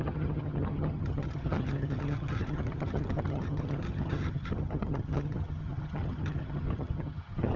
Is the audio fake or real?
fake